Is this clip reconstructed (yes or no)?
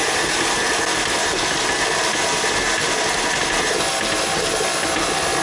no